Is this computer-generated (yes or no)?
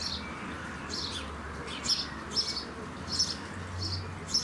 no